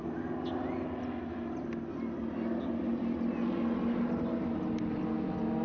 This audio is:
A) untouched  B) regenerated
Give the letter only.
A